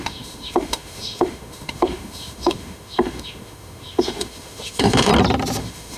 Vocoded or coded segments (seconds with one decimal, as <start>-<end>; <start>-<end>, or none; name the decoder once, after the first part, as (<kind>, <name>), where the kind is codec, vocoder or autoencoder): 0.0-5.1 (autoencoder, DAC-VAE); 5.6-6.0